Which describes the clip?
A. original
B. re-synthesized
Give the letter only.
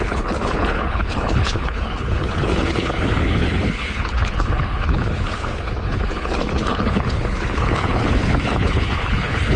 B